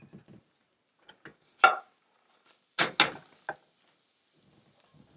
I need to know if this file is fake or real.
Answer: real